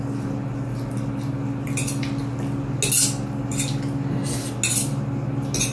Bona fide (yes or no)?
yes